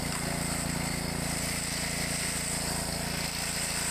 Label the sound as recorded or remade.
recorded